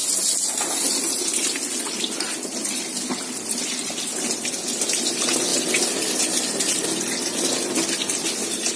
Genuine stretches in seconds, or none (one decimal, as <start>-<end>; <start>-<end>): 0.0-8.8